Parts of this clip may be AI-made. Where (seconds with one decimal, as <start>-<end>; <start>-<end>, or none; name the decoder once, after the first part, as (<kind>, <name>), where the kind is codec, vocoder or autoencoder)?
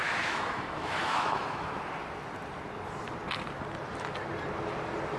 0.0-1.8 (autoencoder, DAC-VAE)